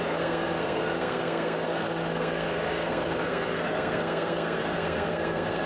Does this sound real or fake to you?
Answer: fake